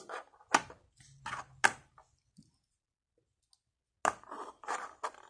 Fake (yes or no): no